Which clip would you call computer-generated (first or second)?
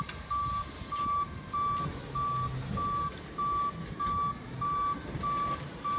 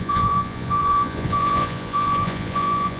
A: second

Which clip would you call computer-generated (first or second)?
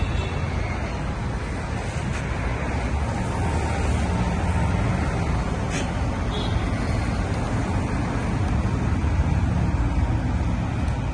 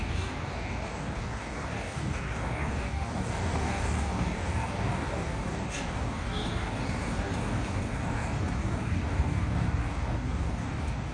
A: second